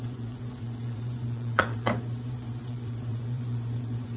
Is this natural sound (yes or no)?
no